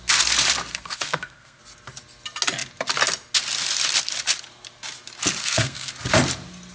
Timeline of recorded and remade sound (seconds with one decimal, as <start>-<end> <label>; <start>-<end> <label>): 0.0-0.7 recorded; 0.7-1.6 remade; 1.6-5.4 recorded; 5.4-5.9 remade; 5.9-6.7 recorded

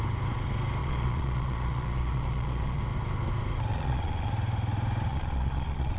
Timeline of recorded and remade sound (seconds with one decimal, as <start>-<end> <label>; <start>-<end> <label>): 0.0-0.8 recorded; 0.8-2.8 remade; 2.8-3.7 recorded; 3.7-4.3 remade; 4.3-5.1 recorded; 5.1-6.0 remade

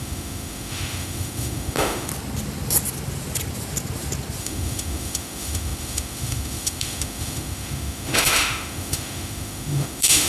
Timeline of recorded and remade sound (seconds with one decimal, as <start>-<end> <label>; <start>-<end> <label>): 0.0-2.1 remade; 2.1-4.4 recorded; 4.4-10.3 remade

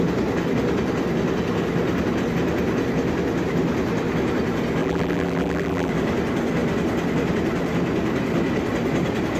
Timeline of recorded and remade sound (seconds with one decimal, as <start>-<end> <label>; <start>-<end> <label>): 0.0-4.8 recorded; 4.8-5.9 remade; 5.9-9.4 recorded